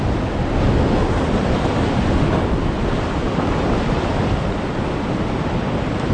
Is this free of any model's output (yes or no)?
yes